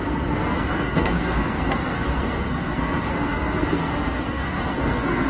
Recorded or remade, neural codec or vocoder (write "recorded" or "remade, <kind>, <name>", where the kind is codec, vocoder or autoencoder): remade, codec, SNAC